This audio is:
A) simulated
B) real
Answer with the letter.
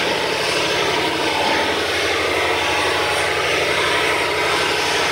B